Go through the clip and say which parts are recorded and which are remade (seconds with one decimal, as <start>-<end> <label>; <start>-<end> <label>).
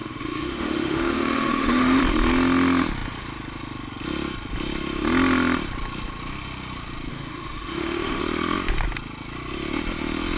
0.0-2.0 remade; 2.0-7.1 recorded; 7.1-8.2 remade; 8.2-10.4 recorded